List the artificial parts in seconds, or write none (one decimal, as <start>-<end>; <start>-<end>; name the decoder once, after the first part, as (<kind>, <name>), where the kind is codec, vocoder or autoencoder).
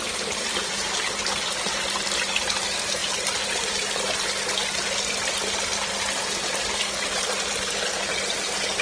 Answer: none